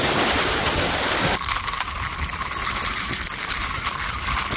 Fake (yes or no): no